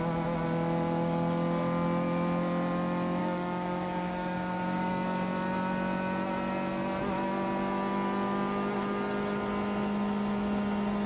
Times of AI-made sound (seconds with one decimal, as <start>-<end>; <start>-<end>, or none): 3.2-4.9